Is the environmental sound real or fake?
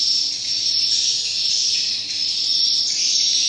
fake